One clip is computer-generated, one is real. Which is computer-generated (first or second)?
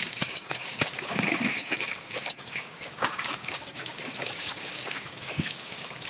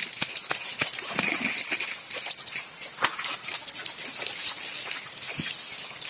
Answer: first